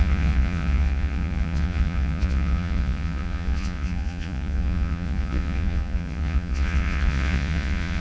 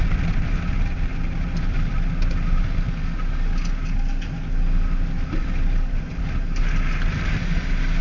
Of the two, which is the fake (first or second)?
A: first